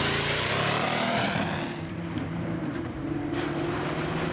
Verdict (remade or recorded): remade